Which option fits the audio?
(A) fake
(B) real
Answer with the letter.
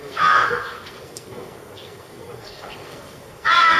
A